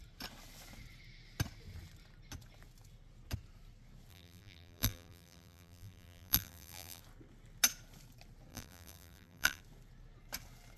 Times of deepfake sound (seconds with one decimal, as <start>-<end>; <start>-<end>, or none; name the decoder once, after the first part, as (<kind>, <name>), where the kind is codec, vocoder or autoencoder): 4.1-7.0 (vocoder, BigVGAN v2); 8.5-9.6